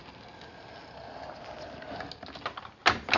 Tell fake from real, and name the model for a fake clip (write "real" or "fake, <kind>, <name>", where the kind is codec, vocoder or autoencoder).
real